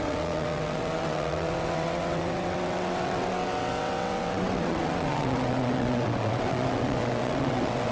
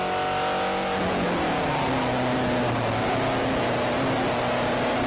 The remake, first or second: first